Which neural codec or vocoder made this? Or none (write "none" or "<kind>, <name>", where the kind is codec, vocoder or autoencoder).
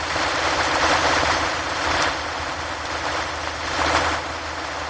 none